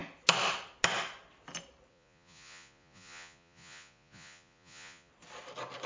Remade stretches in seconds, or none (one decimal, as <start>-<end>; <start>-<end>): 1.9-5.1